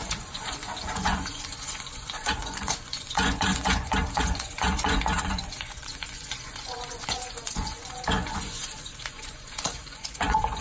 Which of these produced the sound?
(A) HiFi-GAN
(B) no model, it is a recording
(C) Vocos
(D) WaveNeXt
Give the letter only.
C